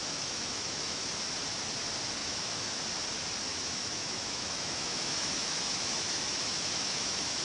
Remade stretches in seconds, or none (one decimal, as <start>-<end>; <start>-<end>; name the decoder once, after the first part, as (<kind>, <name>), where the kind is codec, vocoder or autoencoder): 0.0-1.1 (autoencoder, DAC-VAE); 2.2-2.8; 3.5-7.4